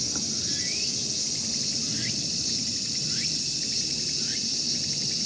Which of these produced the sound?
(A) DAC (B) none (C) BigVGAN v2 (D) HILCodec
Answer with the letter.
B